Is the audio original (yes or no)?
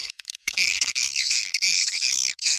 no